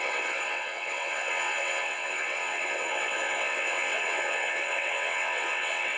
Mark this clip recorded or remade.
remade